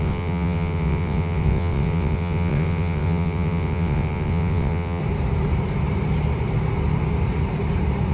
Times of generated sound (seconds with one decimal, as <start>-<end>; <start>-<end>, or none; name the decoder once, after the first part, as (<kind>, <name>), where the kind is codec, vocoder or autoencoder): 0.0-5.0 (vocoder, WaveNeXt)